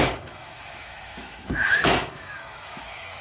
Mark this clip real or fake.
fake